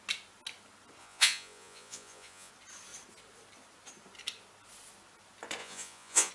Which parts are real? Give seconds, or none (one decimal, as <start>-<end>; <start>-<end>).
0.0-1.0; 2.5-5.6